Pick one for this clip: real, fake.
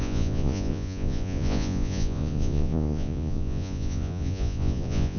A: fake